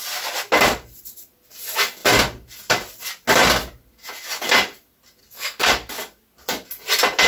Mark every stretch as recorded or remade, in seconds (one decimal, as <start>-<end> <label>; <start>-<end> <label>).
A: 0.0-5.2 recorded; 5.2-5.7 remade; 5.7-7.3 recorded